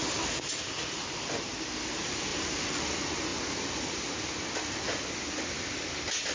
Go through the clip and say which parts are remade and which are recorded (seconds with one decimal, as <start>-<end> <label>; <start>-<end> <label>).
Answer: 0.0-2.3 recorded; 2.3-2.8 remade; 2.8-6.3 recorded